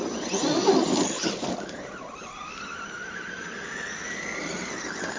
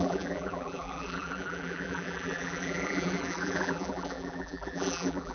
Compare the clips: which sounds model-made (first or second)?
second